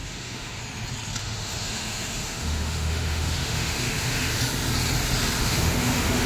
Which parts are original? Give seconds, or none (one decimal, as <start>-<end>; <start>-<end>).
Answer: 0.6-1.2; 4.4-5.4